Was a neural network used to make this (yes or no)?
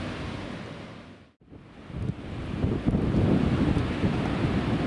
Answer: no